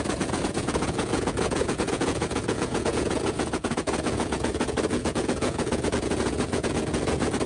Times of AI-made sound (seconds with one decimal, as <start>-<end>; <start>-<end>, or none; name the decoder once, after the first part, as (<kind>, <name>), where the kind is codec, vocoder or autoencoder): 0.0-7.5 (vocoder, Vocos)